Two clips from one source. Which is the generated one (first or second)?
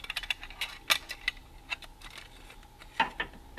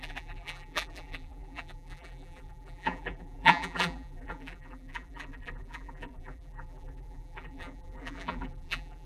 second